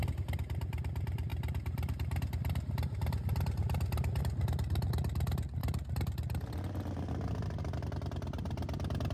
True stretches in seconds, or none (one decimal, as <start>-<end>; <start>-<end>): 0.0-9.1